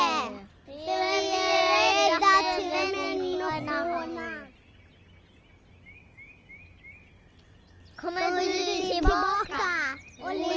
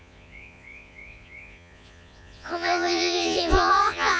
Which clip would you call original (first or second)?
first